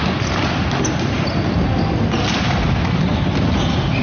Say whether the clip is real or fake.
real